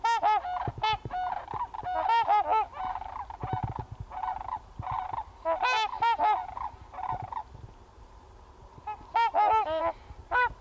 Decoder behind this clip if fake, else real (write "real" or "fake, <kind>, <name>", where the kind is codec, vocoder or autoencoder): real